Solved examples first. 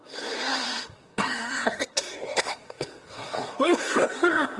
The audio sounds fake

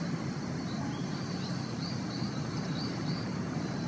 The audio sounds real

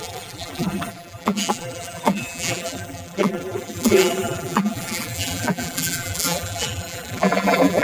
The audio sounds fake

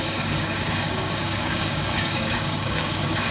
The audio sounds fake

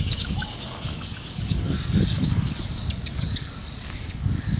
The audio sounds fake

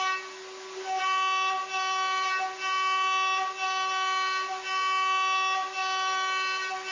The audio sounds real